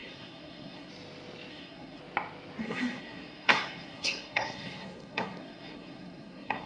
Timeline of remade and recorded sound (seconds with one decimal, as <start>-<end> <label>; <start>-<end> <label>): 0.0-0.9 remade; 0.9-1.5 recorded; 1.5-2.0 remade; 2.0-2.6 recorded; 2.6-6.7 remade